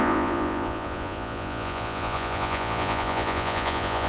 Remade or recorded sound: remade